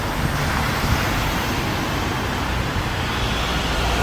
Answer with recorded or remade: recorded